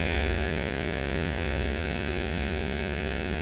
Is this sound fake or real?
fake